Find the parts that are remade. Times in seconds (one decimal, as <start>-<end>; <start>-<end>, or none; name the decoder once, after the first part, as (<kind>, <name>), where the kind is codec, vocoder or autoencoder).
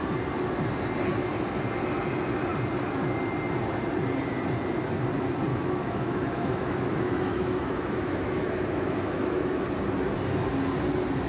5.5-9.6 (autoencoder, DAC-VAE)